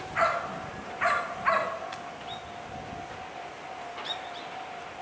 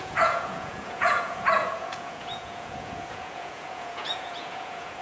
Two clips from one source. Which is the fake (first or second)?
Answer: second